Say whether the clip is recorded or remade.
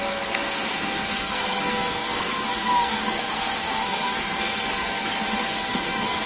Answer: remade